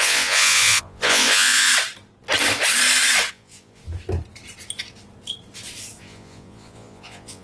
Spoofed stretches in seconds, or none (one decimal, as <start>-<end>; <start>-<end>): 0.0-1.7; 3.3-3.8; 6.0-7.4